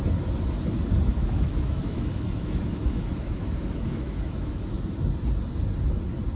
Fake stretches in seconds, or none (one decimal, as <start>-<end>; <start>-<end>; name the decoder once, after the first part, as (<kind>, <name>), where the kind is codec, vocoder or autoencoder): 1.1-4.9 (autoencoder, DAC-VAE)